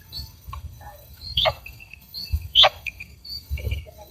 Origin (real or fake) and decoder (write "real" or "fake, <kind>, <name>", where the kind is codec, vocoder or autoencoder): fake, codec, SNAC